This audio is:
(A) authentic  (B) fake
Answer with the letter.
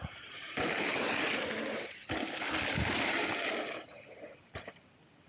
A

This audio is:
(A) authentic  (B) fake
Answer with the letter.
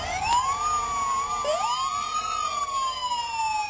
A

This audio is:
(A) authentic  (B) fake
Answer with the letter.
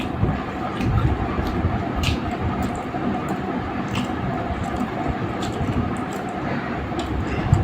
A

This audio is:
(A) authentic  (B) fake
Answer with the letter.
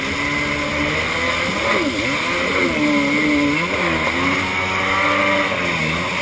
A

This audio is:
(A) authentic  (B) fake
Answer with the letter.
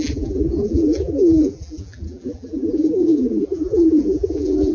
B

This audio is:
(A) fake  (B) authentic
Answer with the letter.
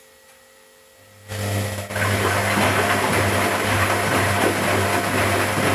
B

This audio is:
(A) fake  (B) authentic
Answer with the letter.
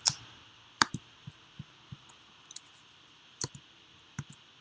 A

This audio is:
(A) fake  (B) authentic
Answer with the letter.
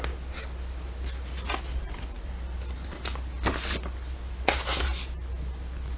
B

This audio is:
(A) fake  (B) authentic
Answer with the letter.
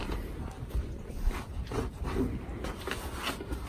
B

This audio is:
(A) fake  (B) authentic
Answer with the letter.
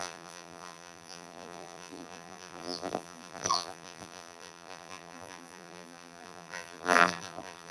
A